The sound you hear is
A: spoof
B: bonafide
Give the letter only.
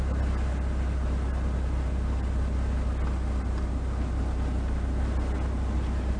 B